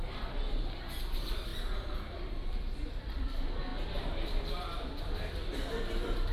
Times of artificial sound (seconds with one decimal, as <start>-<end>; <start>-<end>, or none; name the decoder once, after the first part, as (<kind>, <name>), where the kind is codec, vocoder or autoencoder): 0.0-6.3 (vocoder, BigVGAN v2)